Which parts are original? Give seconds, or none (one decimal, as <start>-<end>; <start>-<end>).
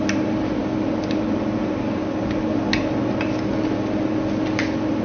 0.0-5.0